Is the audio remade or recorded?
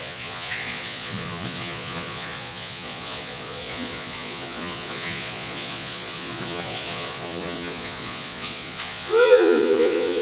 remade